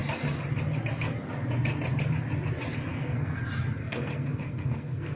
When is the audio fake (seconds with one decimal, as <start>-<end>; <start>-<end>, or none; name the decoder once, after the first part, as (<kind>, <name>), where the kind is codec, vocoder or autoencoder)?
2.9-3.4 (codec, SNAC); 3.8-5.2